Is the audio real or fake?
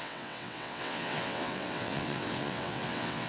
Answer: fake